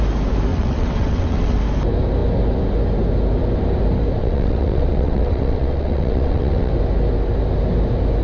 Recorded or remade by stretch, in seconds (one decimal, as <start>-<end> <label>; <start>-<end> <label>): 0.0-0.5 recorded; 0.5-1.6 remade; 1.6-4.2 recorded; 4.2-6.7 remade; 6.7-8.2 recorded